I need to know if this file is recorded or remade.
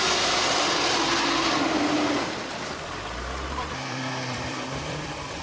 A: remade